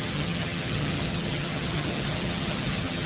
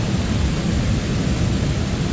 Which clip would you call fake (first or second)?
first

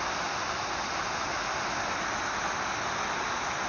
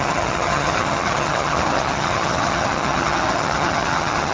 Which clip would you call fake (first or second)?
second